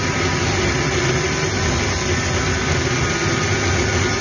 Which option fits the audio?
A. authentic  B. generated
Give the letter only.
A